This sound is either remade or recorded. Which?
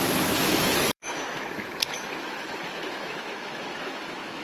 remade